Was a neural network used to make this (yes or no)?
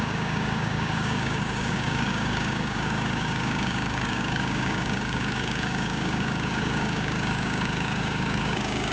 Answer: yes